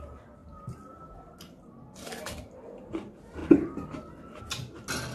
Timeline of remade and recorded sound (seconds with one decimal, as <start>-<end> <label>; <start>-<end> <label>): 0.0-5.1 recorded